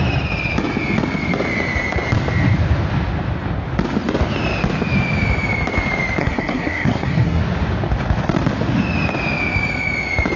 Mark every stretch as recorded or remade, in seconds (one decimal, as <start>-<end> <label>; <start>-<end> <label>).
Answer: 0.0-6.2 recorded; 6.2-7.4 remade; 7.4-10.4 recorded